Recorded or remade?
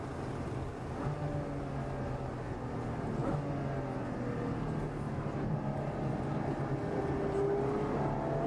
recorded